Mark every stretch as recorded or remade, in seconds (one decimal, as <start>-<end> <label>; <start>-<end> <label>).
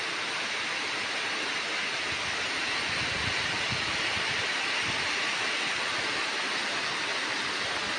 0.0-8.0 recorded